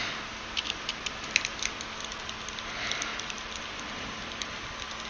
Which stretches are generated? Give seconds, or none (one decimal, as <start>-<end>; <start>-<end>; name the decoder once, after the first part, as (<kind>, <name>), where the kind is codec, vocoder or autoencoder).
3.1-4.6 (vocoder, BigVGAN v2)